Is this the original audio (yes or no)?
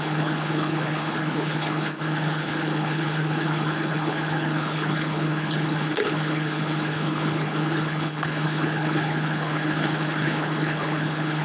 no